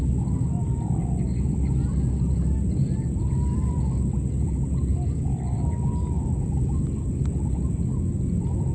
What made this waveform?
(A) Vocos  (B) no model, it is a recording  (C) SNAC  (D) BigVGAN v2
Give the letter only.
B